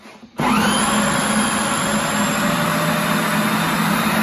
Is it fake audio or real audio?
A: real